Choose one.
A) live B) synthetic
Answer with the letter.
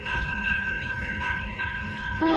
B